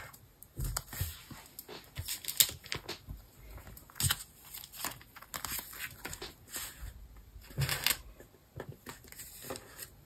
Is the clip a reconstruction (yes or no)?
no